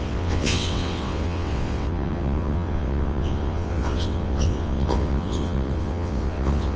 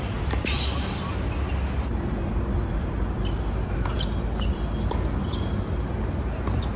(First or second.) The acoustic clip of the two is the second